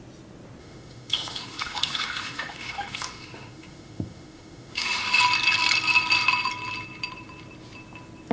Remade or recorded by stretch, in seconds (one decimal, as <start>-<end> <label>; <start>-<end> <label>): 0.0-0.6 recorded; 0.6-5.2 remade; 5.2-8.3 recorded